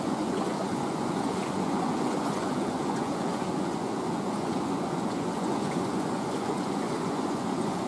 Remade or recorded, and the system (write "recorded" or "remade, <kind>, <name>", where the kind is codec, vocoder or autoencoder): remade, vocoder, Vocos